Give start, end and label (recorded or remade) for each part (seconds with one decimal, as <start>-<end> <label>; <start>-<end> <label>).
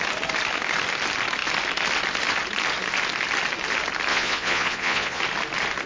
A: 0.0-4.1 recorded; 4.1-5.2 remade; 5.2-5.9 recorded